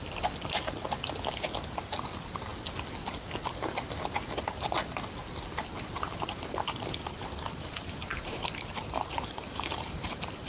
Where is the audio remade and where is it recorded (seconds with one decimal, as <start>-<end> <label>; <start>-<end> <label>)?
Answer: 0.0-7.0 recorded; 7.0-10.5 remade